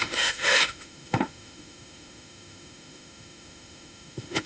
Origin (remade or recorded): remade